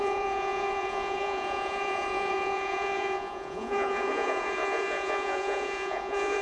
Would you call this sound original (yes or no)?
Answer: no